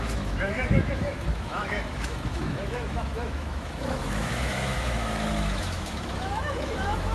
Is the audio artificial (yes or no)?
yes